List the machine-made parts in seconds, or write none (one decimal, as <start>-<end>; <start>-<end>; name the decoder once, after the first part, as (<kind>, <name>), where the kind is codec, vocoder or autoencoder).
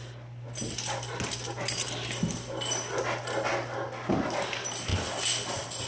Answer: none